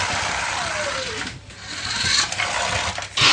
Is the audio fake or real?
real